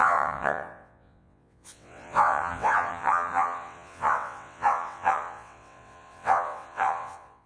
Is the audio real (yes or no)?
no